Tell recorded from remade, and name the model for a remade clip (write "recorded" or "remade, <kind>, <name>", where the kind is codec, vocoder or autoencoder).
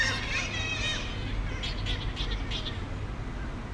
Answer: recorded